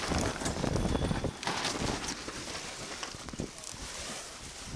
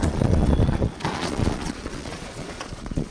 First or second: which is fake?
second